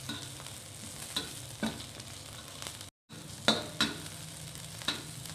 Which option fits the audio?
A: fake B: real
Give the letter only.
B